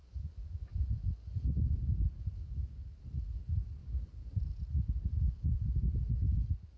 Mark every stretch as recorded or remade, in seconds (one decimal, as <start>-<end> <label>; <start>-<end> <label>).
0.0-0.7 remade; 0.7-2.4 recorded; 2.4-3.0 remade; 3.0-3.8 recorded; 3.8-4.4 remade; 4.4-6.8 recorded